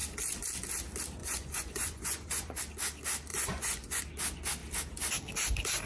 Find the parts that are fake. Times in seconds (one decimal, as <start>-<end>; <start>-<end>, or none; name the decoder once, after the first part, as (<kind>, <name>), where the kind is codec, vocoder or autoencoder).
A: 1.2-2.6 (vocoder, Vocos); 3.3-4.0